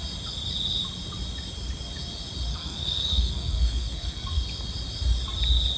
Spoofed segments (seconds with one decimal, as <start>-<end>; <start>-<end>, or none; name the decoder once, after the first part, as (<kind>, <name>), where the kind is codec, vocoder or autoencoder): 2.5-4.4 (codec, SNAC)